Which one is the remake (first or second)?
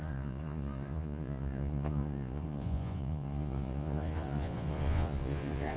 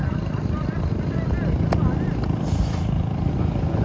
first